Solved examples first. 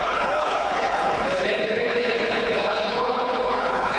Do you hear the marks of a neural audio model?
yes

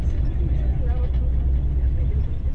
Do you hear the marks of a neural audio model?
no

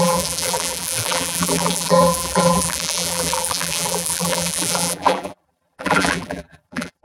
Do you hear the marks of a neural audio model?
yes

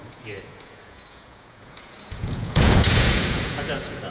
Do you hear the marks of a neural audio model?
yes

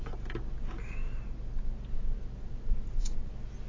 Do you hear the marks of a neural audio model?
no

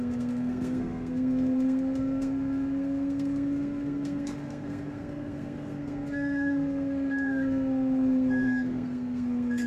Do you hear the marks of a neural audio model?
yes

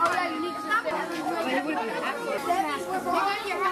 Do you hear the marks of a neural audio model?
no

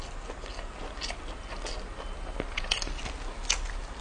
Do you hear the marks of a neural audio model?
no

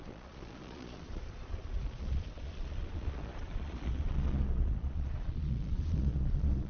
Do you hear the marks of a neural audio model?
yes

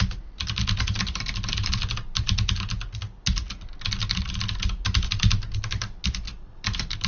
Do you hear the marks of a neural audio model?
no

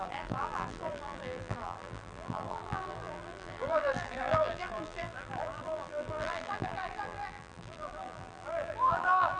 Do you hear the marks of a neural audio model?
yes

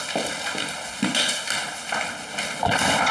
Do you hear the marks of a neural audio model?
no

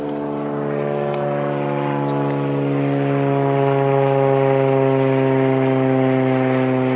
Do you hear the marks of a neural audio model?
no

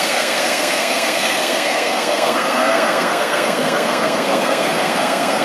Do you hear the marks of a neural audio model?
yes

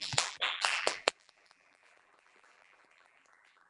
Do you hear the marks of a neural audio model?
yes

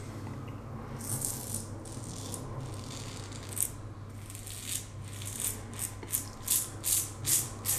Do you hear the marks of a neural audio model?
no